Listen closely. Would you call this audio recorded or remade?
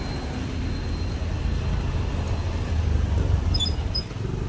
recorded